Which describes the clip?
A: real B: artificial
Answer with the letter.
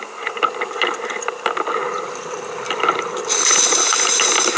A